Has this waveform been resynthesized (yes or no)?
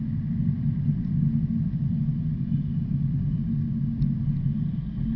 no